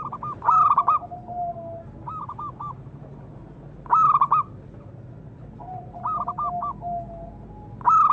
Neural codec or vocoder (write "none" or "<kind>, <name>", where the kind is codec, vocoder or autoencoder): none